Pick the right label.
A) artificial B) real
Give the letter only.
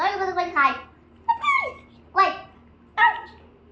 B